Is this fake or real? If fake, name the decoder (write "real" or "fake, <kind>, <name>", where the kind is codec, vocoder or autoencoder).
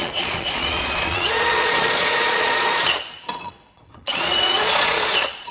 fake, vocoder, Vocos